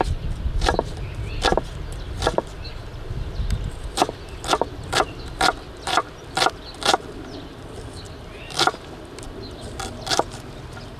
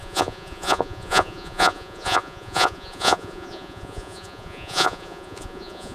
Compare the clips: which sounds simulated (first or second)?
second